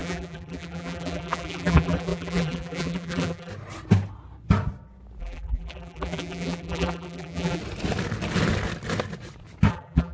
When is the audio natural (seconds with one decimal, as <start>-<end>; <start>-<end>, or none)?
3.5-5.2; 7.6-9.7